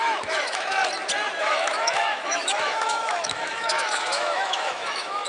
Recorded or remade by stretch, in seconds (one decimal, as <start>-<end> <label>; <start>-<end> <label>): 0.0-0.8 remade; 0.8-1.4 recorded; 1.4-5.3 remade